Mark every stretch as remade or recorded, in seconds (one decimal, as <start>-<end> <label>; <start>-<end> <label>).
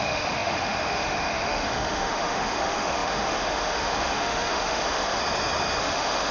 0.0-5.2 remade; 5.2-5.8 recorded; 5.8-6.3 remade